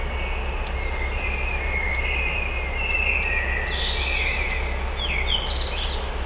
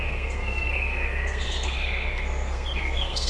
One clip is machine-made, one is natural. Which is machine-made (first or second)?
second